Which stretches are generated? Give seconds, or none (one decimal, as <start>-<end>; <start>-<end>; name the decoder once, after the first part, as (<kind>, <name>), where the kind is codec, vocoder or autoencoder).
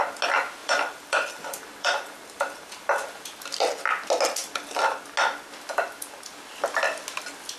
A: 0.6-3.2 (vocoder, BigVGAN v2); 4.4-5.0